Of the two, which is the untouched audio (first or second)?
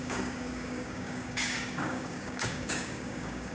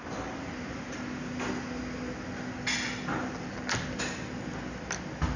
second